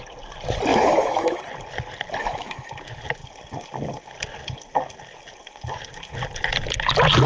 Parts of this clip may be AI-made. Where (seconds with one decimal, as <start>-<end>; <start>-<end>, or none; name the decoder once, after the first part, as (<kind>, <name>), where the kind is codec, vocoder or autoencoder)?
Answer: 0.7-1.4 (autoencoder, DAC-VAE); 2.2-2.7